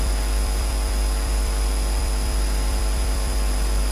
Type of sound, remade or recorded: remade